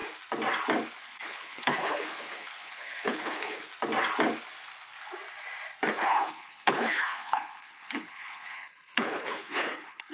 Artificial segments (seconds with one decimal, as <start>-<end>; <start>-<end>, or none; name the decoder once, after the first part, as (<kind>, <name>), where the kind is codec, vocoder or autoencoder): 1.0-3.7 (codec, HILCodec); 5.9-10.1